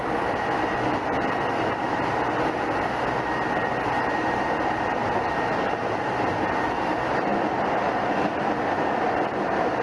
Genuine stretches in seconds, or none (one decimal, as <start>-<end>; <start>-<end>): 0.0-7.3; 8.4-9.8